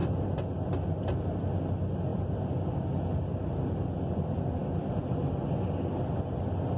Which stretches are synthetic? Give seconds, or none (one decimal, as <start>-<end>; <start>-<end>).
0.0-1.6; 2.1-2.7; 4.6-5.2